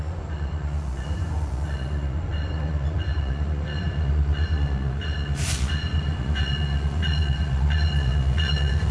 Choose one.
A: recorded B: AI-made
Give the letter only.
B